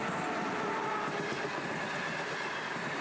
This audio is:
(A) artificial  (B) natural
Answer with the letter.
B